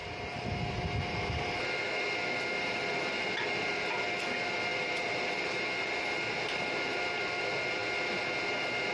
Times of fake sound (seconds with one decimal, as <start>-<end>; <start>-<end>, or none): 4.7-5.4